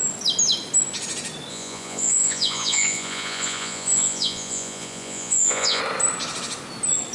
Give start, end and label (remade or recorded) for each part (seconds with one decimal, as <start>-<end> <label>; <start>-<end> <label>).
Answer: 0.0-1.5 recorded; 1.5-5.8 remade; 5.8-7.1 recorded